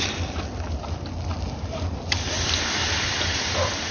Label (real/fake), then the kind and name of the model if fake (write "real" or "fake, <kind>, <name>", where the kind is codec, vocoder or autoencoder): real